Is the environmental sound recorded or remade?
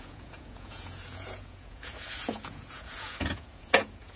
remade